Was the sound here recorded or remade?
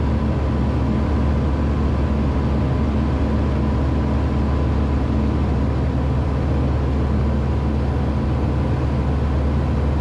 recorded